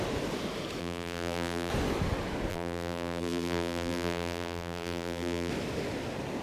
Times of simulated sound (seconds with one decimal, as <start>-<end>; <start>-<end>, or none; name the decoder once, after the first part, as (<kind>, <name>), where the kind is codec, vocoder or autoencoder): 0.8-1.7 (vocoder, BigVGAN v2); 2.5-5.5